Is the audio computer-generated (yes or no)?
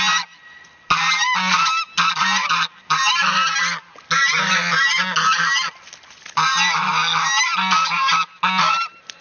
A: no